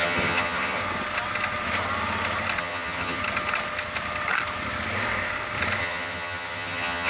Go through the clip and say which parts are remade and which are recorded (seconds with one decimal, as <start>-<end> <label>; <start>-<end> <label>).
0.0-0.8 remade; 0.8-2.6 recorded; 2.6-3.2 remade; 3.2-5.8 recorded; 5.8-7.1 remade